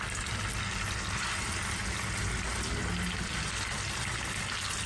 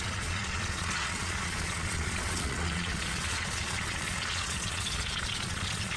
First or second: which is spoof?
second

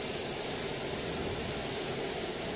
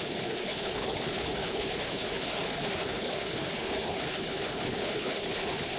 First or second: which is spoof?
second